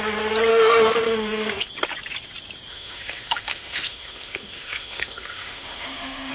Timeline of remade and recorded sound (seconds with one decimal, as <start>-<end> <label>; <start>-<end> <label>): 0.0-0.5 recorded; 0.5-1.7 remade; 1.7-2.7 recorded; 2.7-6.3 remade